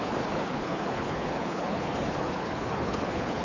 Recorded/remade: remade